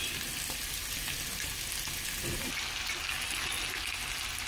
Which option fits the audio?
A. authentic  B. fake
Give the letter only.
A